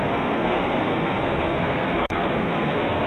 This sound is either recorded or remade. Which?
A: remade